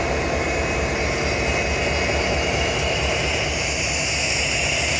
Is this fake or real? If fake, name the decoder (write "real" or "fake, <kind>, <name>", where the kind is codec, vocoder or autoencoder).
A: real